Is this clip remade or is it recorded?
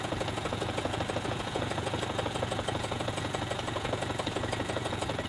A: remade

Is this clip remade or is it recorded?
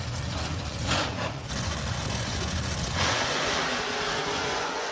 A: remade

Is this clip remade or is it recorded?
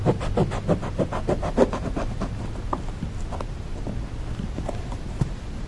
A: recorded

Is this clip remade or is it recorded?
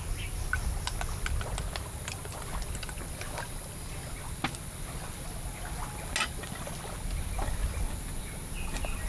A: recorded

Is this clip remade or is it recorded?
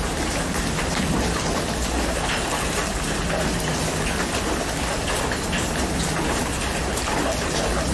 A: recorded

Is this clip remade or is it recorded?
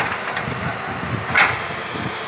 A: recorded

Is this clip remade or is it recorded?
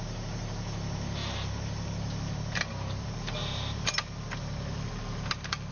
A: recorded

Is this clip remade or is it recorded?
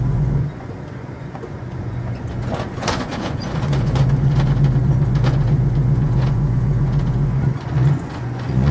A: remade